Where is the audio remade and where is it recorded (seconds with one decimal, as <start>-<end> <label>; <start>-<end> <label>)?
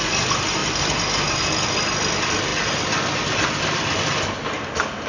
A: 0.0-5.1 recorded